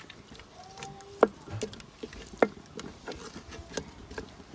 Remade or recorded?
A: recorded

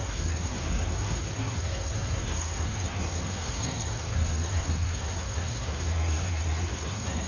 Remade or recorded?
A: remade